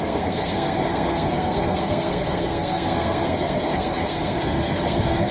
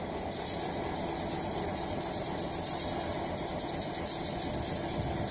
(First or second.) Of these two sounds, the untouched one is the second